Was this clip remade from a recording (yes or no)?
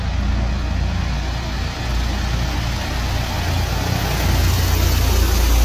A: no